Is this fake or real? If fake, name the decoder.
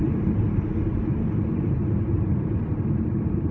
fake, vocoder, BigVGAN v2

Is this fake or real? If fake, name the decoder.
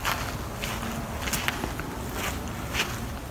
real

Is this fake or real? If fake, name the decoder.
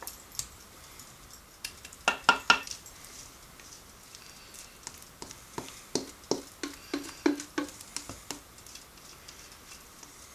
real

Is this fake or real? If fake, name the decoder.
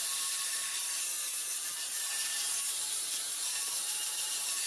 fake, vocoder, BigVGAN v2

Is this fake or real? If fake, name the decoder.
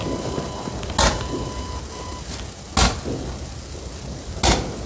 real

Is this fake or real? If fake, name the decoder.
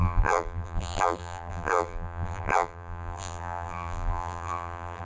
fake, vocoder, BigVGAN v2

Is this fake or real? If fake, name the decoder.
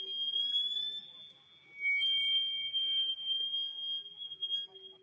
real